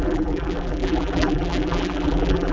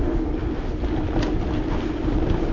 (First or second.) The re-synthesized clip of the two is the first